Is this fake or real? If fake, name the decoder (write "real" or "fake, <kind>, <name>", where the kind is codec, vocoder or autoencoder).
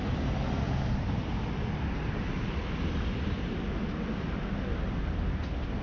real